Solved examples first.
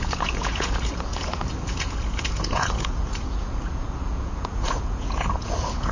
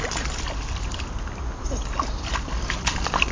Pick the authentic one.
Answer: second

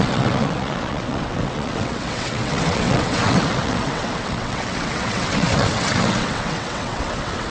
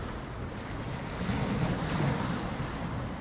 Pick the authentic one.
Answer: second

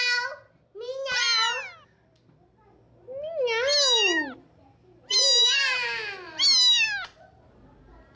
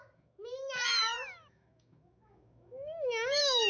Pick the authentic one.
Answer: first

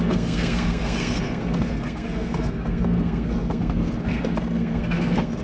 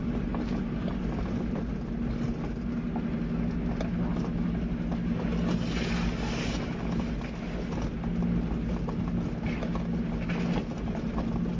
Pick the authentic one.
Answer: second